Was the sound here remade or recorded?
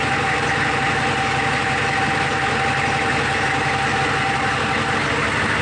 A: recorded